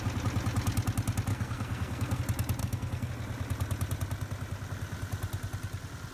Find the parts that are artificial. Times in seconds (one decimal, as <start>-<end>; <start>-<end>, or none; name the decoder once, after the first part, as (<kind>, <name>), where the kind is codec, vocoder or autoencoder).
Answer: 1.3-2.2 (codec, SNAC); 2.6-3.1

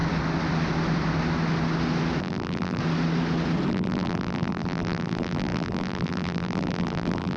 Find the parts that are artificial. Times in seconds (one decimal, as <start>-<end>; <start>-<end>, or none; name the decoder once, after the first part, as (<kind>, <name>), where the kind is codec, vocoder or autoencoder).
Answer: 2.2-2.8 (vocoder, BigVGAN v2); 3.7-7.4

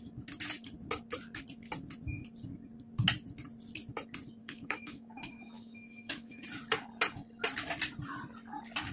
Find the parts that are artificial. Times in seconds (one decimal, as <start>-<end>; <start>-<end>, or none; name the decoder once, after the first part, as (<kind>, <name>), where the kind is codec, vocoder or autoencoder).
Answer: 4.4-6.4 (autoencoder, DAC-VAE)

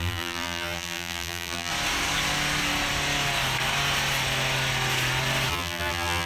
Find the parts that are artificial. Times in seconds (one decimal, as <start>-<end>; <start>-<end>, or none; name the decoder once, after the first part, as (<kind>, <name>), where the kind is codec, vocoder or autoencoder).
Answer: 0.0-1.7 (vocoder, BigVGAN v2); 5.5-6.3

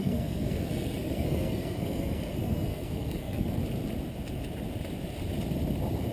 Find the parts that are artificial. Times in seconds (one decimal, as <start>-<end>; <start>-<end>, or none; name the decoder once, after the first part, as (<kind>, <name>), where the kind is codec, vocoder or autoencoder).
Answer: 0.0-3.6 (codec, SNAC)

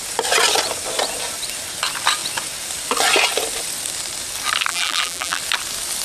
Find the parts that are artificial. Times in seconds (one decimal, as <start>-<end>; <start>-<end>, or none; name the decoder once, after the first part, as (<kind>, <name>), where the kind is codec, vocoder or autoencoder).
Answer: 4.7-5.4 (vocoder, BigVGAN v2)

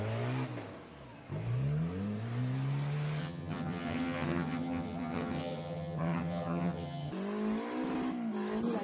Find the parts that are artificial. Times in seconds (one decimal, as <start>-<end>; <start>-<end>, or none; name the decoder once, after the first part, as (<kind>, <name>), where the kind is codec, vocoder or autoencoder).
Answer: 3.2-7.1 (vocoder, HiFi-GAN)